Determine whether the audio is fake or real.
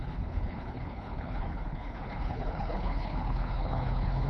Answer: fake